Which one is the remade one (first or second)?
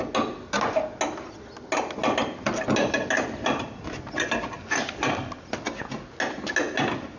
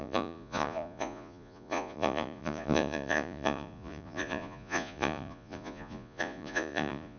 second